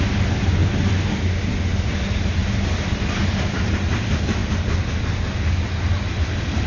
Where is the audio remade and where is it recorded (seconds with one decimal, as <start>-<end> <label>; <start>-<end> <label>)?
0.0-0.6 recorded; 0.6-1.1 remade; 1.1-6.7 recorded

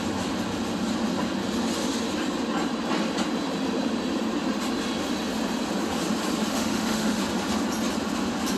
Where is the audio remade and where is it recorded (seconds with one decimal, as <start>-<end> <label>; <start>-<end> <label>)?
0.0-6.5 recorded; 6.5-7.2 remade; 7.2-8.6 recorded

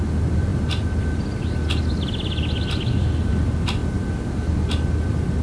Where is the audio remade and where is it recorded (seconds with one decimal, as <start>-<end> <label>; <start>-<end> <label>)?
0.0-5.4 recorded

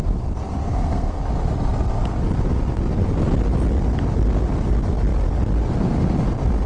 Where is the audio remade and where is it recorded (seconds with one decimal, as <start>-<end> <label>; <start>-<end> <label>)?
0.0-0.7 recorded; 0.7-1.2 remade; 1.2-6.7 recorded

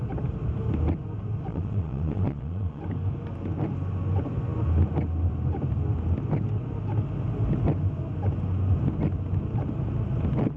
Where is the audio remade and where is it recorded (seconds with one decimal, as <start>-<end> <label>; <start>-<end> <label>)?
0.0-1.5 recorded; 1.5-2.8 remade; 2.8-10.6 recorded

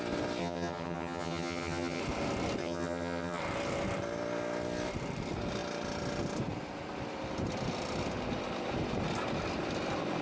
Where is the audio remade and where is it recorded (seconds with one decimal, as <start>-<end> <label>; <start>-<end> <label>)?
0.0-0.4 recorded; 0.4-2.0 remade; 2.0-2.6 recorded; 2.6-3.4 remade; 3.4-10.2 recorded

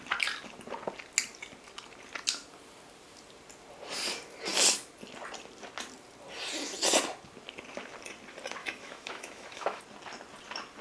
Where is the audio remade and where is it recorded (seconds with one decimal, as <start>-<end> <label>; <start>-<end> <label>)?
0.0-8.6 recorded; 8.6-9.8 remade; 9.8-10.8 recorded